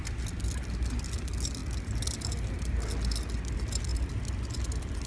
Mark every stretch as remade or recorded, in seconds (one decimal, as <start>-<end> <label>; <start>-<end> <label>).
0.0-5.1 recorded